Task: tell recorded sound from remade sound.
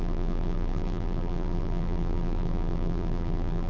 remade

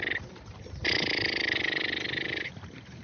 recorded